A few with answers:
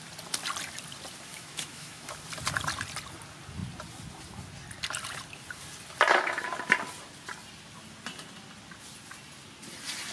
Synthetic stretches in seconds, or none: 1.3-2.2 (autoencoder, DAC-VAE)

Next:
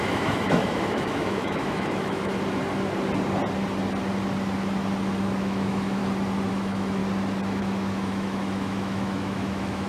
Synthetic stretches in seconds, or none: 0.0-2.3 (autoencoder, DAC-VAE); 5.4-6.0; 6.5-7.0; 7.6-9.9

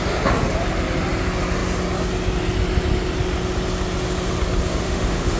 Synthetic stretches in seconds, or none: 4.7-5.4 (autoencoder, DAC-VAE)

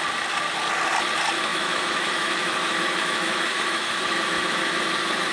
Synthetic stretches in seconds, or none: 1.5-4.7 (autoencoder, DAC-VAE)

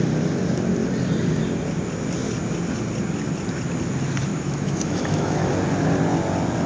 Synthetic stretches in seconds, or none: 4.3-5.5 (autoencoder, DAC-VAE)

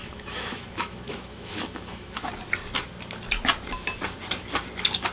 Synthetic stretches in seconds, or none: 0.0-2.3 (autoencoder, DAC-VAE)